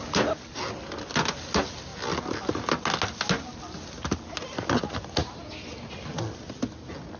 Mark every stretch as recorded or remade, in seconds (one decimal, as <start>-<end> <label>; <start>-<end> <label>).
0.0-7.2 recorded